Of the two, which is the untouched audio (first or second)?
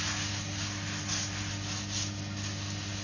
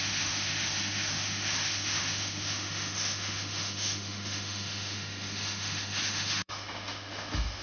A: first